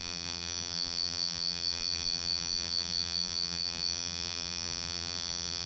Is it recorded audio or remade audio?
remade